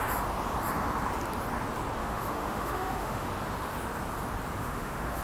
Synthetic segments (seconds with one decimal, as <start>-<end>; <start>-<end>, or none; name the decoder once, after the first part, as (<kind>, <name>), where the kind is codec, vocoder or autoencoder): 2.0-3.3 (autoencoder, DAC-VAE); 4.6-5.2